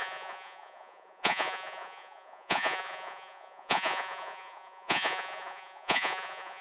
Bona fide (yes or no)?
no